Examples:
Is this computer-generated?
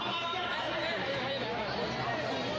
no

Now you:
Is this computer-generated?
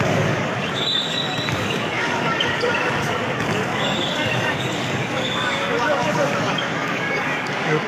yes